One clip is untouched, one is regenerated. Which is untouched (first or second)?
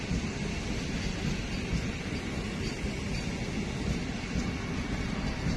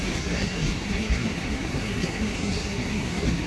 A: first